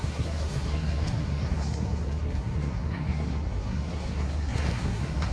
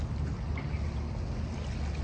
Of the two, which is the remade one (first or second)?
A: first